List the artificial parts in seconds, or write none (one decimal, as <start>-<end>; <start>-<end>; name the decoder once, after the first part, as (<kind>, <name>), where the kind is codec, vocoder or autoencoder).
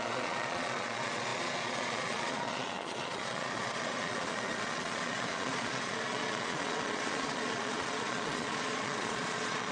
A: 0.0-9.7 (vocoder, Vocos)